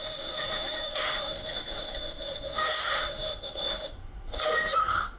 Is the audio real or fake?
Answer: fake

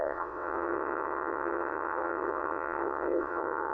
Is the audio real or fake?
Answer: fake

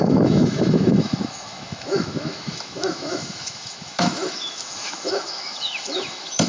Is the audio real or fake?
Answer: fake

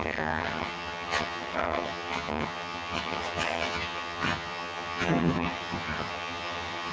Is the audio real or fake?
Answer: fake